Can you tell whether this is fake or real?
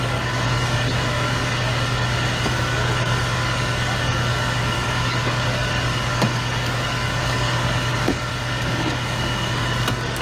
fake